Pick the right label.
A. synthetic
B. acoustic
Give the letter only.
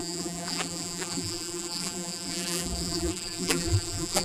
A